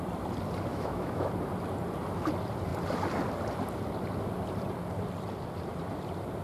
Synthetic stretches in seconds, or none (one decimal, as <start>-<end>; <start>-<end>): 0.7-1.3